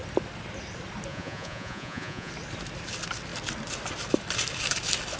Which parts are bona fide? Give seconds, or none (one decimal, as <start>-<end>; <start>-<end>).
0.0-1.1; 2.3-5.2